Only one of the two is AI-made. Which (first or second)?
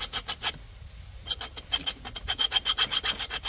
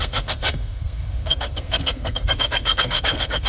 second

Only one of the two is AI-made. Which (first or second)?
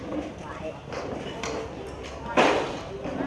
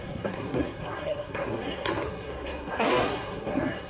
second